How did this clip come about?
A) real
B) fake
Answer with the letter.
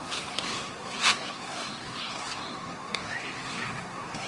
B